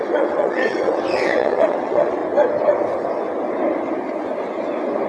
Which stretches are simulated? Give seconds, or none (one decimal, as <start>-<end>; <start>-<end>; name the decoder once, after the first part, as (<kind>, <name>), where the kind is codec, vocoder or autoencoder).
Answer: 0.0-2.2 (vocoder, WaveNeXt)